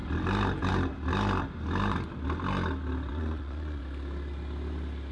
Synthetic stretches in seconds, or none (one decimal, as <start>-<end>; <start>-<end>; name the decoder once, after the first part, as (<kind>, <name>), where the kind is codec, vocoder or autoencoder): 3.1-3.8 (vocoder, Vocos)